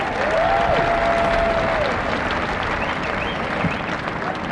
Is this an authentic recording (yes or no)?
yes